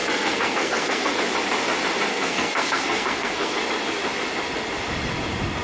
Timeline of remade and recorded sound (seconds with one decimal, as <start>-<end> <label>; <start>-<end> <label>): 0.0-1.1 remade; 1.1-2.1 recorded; 2.1-3.6 remade; 3.6-5.6 recorded